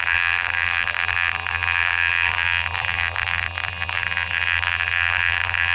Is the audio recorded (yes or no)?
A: no